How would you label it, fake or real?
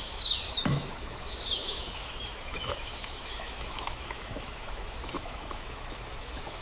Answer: fake